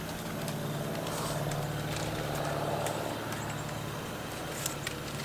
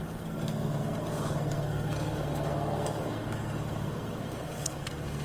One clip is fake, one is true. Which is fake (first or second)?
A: second